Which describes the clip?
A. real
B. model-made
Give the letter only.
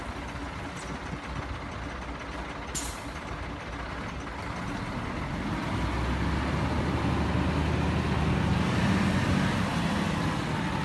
A